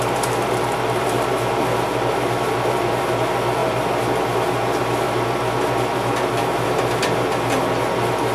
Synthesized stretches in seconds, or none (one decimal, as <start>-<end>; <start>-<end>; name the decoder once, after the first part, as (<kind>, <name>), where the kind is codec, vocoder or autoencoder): none